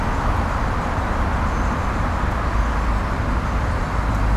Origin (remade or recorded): recorded